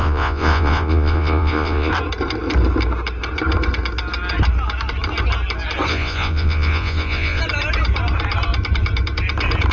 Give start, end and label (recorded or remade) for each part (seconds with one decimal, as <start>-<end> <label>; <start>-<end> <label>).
0.0-1.9 remade; 1.9-5.9 recorded; 5.9-7.4 remade; 7.4-9.7 recorded

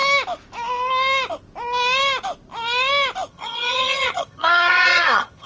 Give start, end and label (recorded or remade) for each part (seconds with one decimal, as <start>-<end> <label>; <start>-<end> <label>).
0.0-3.3 recorded; 3.3-5.5 remade

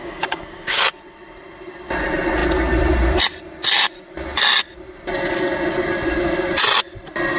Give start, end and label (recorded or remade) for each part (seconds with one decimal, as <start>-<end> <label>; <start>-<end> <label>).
0.0-0.8 remade; 0.8-7.4 recorded

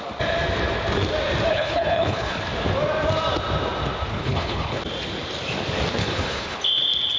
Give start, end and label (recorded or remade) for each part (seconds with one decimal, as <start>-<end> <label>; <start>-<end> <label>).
0.0-1.5 recorded; 1.5-2.4 remade; 2.4-4.1 recorded; 4.1-4.8 remade; 4.8-6.0 recorded; 6.0-6.6 remade; 6.6-7.2 recorded

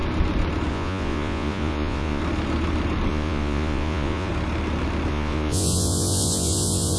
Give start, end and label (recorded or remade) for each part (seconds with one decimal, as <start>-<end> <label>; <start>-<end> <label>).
0.0-0.7 recorded; 0.7-2.2 remade; 2.2-3.1 recorded; 3.1-4.3 remade; 4.3-5.1 recorded; 5.1-7.0 remade